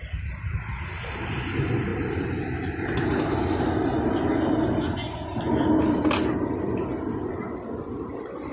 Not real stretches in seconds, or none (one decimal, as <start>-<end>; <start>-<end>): none